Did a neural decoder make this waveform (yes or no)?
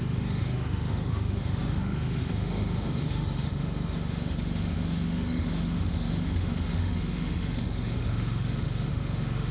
yes